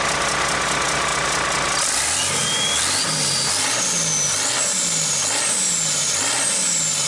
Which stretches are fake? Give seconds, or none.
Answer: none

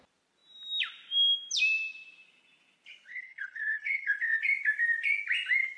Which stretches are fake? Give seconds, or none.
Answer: 3.1-4.4 (codec, HILCodec)

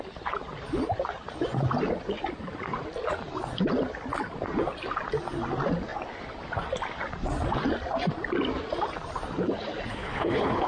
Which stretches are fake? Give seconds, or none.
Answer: 9.9-10.7 (codec, HILCodec)

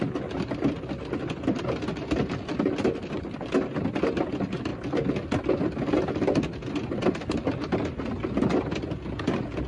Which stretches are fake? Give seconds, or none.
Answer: none

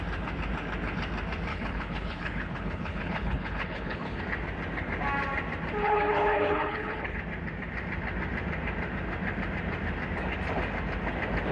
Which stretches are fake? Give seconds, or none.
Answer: 1.5-4.2 (codec, HILCodec); 5.8-7.2